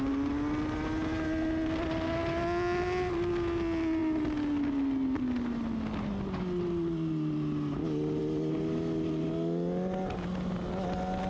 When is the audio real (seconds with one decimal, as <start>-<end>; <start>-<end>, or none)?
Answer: 0.0-11.3